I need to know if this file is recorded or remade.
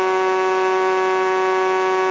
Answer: remade